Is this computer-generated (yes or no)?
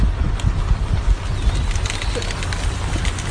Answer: no